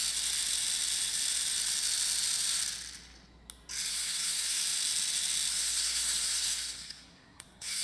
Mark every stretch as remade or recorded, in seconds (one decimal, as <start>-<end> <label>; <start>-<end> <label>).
0.0-3.9 recorded; 3.9-4.6 remade; 4.6-5.5 recorded; 5.5-7.8 remade

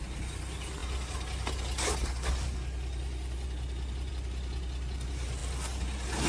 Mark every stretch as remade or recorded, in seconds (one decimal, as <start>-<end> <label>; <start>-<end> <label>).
0.0-6.3 recorded